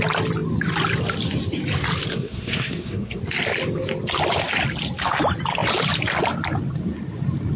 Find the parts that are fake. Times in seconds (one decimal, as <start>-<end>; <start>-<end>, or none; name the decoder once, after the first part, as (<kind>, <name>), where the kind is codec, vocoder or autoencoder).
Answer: 2.1-3.2 (codec, SNAC)